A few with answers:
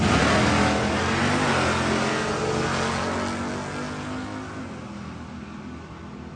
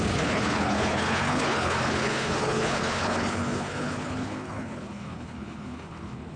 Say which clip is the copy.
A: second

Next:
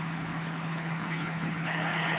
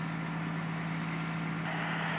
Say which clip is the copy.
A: first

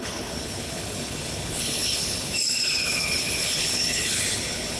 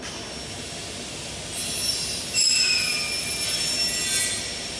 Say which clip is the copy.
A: first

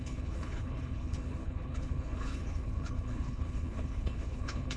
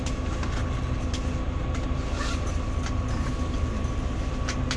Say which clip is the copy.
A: first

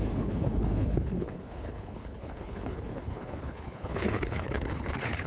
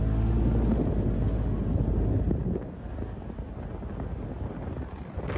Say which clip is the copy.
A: first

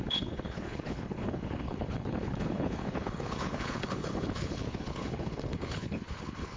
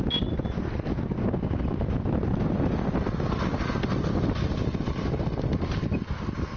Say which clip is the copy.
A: first